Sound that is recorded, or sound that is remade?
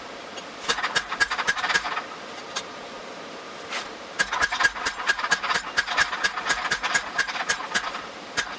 recorded